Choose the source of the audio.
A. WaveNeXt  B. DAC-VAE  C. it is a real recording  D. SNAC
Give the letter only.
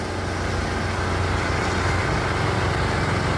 C